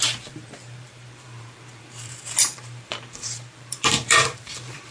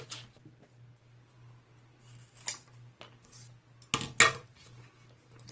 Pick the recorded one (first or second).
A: second